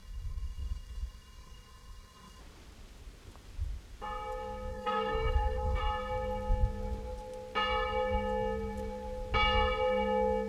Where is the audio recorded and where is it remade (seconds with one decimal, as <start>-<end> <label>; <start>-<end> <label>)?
0.0-2.4 remade; 2.4-4.7 recorded; 4.7-5.8 remade; 5.8-10.5 recorded